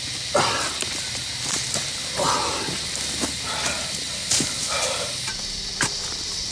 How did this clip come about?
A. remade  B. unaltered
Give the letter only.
B